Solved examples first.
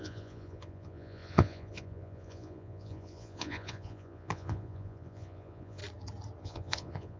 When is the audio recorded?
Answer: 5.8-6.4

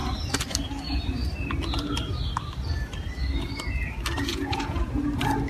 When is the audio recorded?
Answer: 0.0-4.3; 4.9-5.5

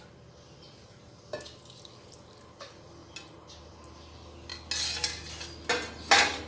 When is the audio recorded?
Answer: 0.0-6.5

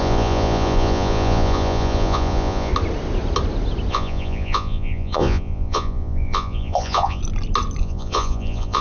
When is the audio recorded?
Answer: 2.7-3.9; 7.2-7.8

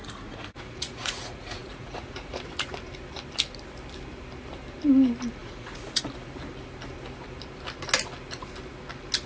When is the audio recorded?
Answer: 2.5-5.4; 6.0-9.3

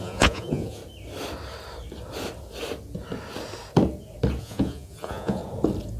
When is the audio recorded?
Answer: 0.8-4.4; 5.4-6.0

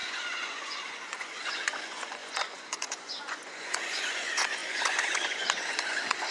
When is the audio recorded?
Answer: none

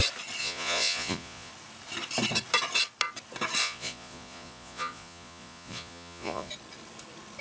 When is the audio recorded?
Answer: 0.0-0.4; 1.5-3.6; 6.5-7.4